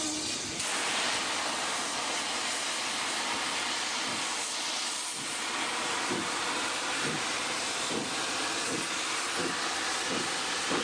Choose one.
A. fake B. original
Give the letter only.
B